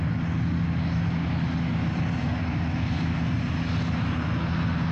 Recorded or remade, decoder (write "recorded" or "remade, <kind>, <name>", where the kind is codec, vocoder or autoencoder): recorded